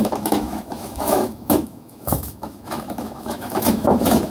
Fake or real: fake